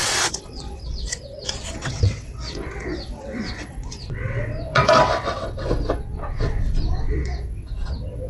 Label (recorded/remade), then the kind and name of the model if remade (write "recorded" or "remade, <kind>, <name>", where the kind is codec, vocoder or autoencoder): remade, vocoder, WaveNeXt